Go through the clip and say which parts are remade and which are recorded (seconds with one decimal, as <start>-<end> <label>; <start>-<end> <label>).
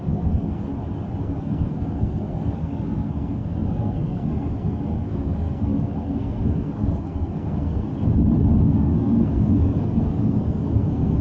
0.0-0.7 remade; 0.7-1.2 recorded; 1.2-7.9 remade; 7.9-8.6 recorded; 8.6-11.2 remade